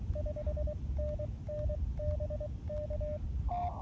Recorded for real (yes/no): yes